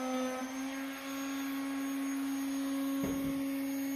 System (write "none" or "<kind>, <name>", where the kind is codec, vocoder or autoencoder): none